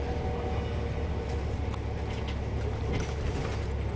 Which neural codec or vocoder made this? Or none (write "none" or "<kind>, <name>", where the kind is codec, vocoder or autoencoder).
none